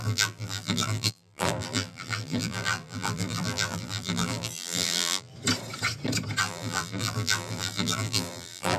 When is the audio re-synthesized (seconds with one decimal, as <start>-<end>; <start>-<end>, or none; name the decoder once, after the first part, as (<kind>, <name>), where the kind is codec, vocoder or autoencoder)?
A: 0.0-5.3 (vocoder, BigVGAN v2); 6.4-8.8